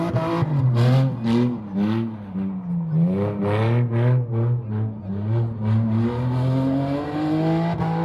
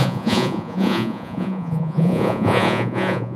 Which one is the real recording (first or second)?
first